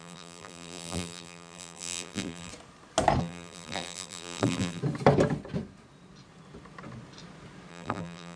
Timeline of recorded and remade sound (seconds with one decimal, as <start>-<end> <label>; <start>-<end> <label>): 0.0-2.5 remade; 2.5-3.2 recorded; 3.2-4.8 remade; 4.8-7.7 recorded; 7.7-8.4 remade